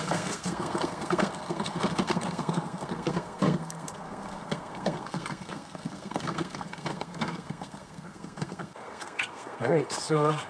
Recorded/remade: remade